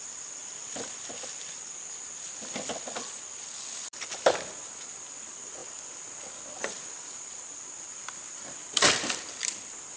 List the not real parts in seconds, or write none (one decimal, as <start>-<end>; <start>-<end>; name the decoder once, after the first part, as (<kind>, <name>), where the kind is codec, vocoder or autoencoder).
none

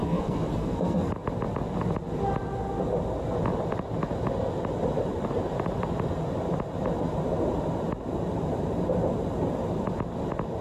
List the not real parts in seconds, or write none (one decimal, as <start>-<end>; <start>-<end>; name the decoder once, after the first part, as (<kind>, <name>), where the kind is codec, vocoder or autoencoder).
0.0-1.1 (codec, SNAC)

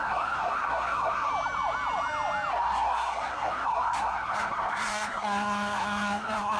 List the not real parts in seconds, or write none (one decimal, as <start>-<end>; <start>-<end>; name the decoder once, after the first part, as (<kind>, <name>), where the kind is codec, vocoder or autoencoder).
0.0-1.3 (codec, SNAC); 2.5-6.6

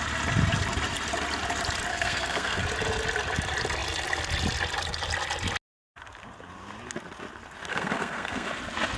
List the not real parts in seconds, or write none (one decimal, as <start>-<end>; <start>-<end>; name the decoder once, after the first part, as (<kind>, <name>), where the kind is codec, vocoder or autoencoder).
1.9-2.6 (codec, SNAC); 7.7-8.5